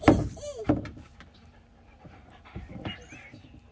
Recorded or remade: remade